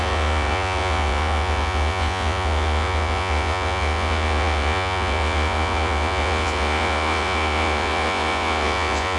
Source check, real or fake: fake